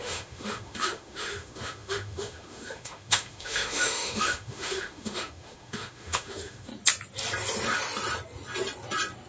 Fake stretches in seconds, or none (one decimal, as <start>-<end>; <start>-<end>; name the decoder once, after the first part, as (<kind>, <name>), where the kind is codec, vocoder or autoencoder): 0.0-6.7 (autoencoder, DAC-VAE)